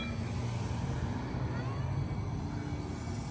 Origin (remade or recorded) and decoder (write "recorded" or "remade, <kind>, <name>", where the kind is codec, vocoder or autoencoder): recorded